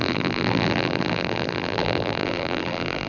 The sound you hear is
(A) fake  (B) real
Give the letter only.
A